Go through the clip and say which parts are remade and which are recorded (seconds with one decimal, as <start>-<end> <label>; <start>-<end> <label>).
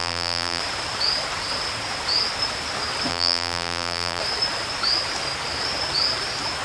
0.0-0.6 remade; 0.6-3.1 recorded; 3.1-4.2 remade; 4.2-6.6 recorded